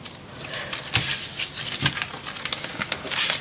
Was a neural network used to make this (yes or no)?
no